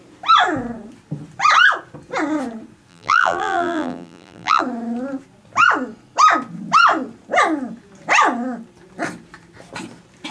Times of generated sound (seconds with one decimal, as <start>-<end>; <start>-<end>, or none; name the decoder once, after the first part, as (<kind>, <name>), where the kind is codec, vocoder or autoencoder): 2.9-4.6 (vocoder, BigVGAN v2)